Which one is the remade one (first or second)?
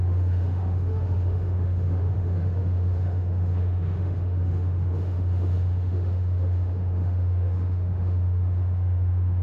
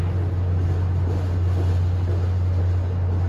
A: first